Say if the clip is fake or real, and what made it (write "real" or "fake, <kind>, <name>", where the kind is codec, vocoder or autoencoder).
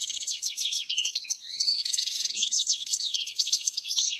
fake, codec, SNAC